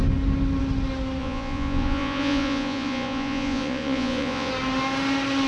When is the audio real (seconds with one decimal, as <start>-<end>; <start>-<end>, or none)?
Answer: 0.0-1.2; 4.5-5.5